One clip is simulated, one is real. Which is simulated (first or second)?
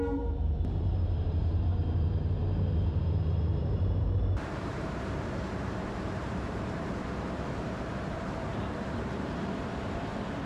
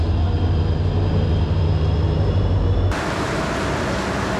first